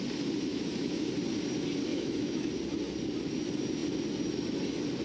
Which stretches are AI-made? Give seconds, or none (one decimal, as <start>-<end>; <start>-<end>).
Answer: 0.5-1.1; 1.9-2.5